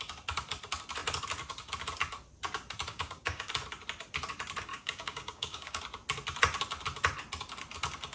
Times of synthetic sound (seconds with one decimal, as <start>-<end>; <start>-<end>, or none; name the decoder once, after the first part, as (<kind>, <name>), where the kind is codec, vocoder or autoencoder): 2.9-3.5 (codec, DAC); 4.7-5.8